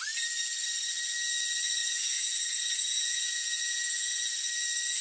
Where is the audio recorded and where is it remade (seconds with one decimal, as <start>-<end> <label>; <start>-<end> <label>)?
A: 0.0-1.8 recorded; 1.8-4.3 remade; 4.3-5.0 recorded